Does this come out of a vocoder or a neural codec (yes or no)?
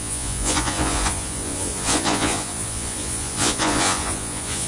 yes